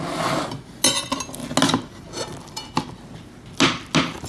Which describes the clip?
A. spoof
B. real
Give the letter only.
B